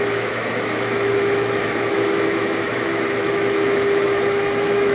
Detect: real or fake fake